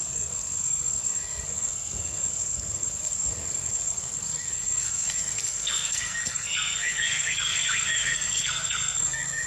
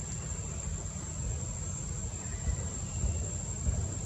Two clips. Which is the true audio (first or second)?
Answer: second